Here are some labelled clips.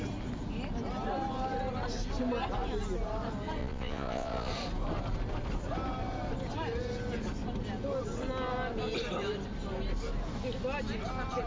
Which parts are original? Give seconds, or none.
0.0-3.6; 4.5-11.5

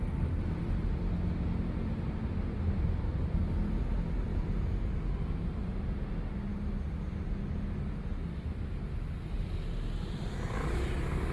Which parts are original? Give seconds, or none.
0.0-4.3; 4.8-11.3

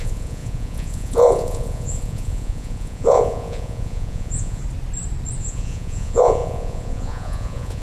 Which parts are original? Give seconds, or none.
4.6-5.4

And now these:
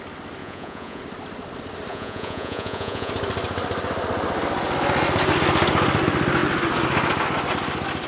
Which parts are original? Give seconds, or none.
0.0-0.4; 1.0-1.9; 3.1-8.1

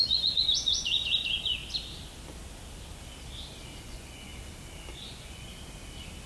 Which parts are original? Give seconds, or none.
1.6-3.8; 4.3-4.9; 5.5-6.3

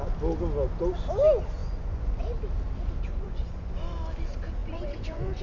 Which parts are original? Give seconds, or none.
0.0-1.6; 2.2-3.1; 3.7-4.6